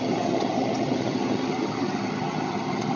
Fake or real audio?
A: fake